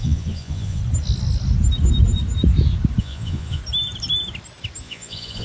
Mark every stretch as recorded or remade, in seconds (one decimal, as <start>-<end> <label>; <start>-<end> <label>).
0.0-0.8 remade; 0.8-3.0 recorded; 3.0-3.6 remade; 3.6-4.8 recorded; 4.8-5.4 remade